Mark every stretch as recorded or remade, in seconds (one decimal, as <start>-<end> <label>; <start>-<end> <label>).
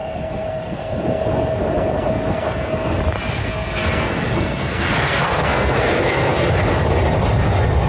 0.0-3.0 remade; 3.0-3.4 recorded; 3.4-6.5 remade; 6.5-7.9 recorded